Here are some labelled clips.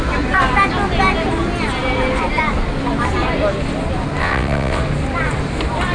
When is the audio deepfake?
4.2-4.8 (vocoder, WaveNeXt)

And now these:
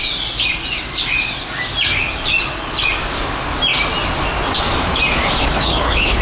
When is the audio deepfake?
5.4-6.2 (codec, HILCodec)

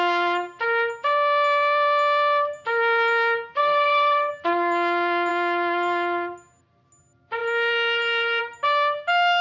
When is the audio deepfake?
3.6-4.3 (codec, DAC)

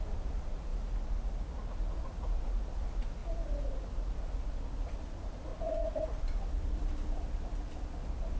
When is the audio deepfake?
0.0-0.7 (vocoder, BigVGAN v2); 2.4-3.2; 4.5-8.4

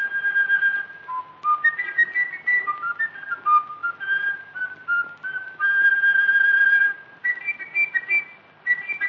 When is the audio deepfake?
none

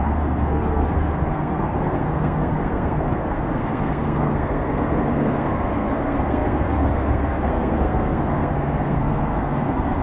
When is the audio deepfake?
0.0-10.0 (codec, SNAC)